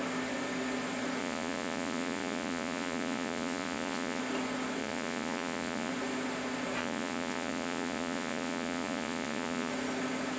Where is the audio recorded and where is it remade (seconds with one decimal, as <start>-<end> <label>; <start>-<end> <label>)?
0.0-1.2 recorded; 1.2-4.2 remade; 4.2-4.8 recorded; 4.8-5.9 remade; 5.9-6.8 recorded; 6.8-9.7 remade; 9.7-10.4 recorded